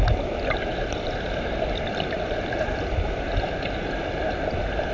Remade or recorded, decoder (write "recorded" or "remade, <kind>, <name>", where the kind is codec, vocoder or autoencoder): remade, vocoder, BigVGAN v2